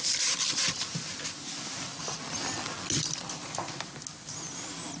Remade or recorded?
recorded